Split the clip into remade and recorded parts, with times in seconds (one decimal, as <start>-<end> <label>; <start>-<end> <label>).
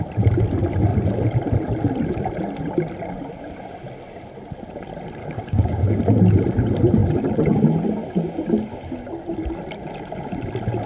0.0-5.2 recorded; 5.2-6.0 remade; 6.0-10.9 recorded